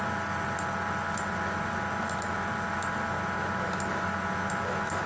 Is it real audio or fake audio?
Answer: real